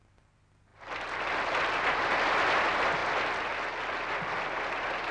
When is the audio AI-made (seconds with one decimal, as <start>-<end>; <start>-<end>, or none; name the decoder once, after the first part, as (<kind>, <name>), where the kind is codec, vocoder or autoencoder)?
none